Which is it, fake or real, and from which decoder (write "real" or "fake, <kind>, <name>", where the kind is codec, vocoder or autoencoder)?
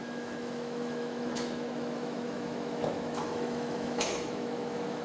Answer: fake, autoencoder, DAC-VAE